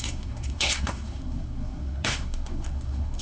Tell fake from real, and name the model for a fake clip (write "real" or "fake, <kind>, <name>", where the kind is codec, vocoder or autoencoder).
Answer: fake, codec, SNAC